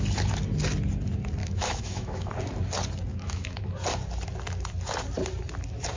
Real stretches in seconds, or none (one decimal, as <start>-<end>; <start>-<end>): 0.0-1.4; 2.3-3.1; 3.6-6.0